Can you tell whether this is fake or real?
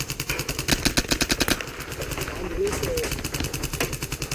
real